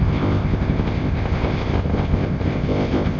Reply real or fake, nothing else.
fake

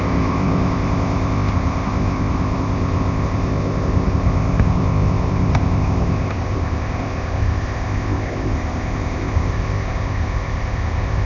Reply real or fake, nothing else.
fake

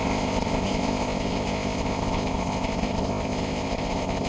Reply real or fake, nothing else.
fake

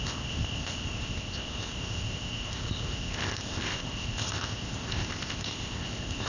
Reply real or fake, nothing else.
fake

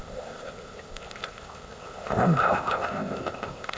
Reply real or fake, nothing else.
fake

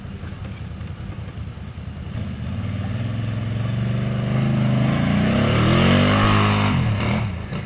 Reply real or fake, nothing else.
real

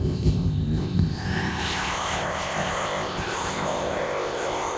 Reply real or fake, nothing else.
fake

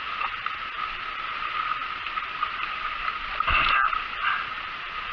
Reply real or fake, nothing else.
real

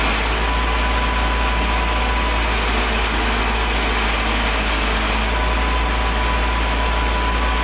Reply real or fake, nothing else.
real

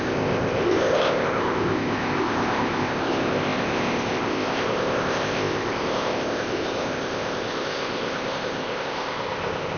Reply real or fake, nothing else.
fake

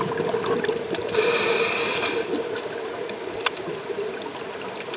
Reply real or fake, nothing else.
real